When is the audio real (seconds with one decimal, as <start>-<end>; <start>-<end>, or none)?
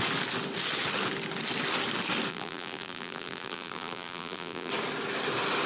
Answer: 0.0-2.3; 4.7-5.7